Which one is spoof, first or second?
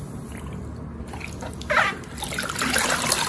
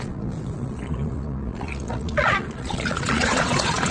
second